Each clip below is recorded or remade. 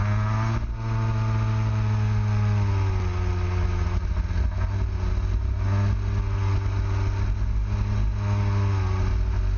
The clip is recorded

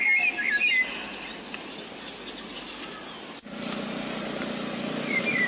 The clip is recorded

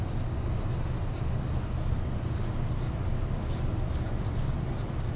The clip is recorded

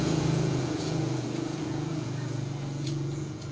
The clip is remade